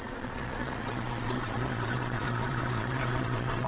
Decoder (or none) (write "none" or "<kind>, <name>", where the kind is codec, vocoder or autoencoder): vocoder, Vocos